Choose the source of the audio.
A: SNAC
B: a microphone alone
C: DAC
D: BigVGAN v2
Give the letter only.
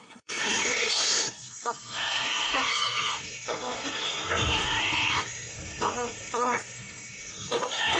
A